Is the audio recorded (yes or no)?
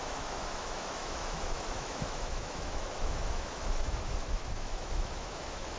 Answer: no